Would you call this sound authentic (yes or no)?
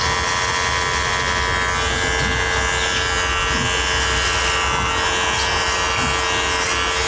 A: yes